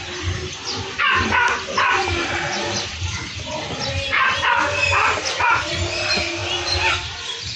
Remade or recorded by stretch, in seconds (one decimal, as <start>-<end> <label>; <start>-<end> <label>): 0.0-7.6 recorded

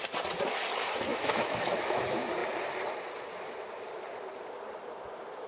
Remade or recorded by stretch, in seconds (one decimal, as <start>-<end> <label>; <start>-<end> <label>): 0.0-1.1 recorded; 1.1-2.0 remade; 2.0-5.5 recorded

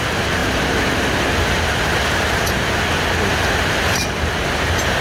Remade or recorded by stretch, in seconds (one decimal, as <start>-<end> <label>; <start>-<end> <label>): 0.0-5.0 recorded

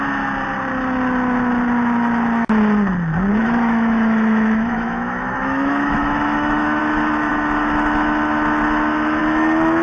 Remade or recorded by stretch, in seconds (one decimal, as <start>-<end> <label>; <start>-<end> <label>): 0.0-3.4 recorded; 3.4-6.8 remade; 6.8-9.8 recorded

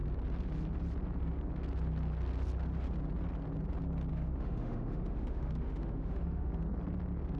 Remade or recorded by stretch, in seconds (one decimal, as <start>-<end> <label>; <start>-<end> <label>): 0.0-4.1 recorded; 4.1-6.5 remade; 6.5-7.4 recorded

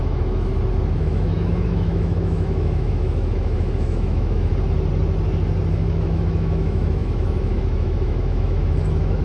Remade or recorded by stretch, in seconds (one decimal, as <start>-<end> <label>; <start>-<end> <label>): 0.0-0.5 remade; 0.5-1.0 recorded; 1.0-4.5 remade; 4.5-5.7 recorded; 5.7-9.2 remade